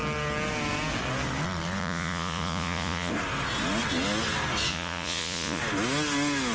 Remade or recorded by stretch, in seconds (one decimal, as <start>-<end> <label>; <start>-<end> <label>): 0.0-1.8 recorded; 1.8-3.1 remade; 3.1-4.7 recorded; 4.7-5.6 remade; 5.6-6.5 recorded